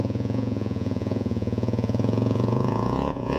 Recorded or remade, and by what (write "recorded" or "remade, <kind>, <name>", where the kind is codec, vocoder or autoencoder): remade, vocoder, Vocos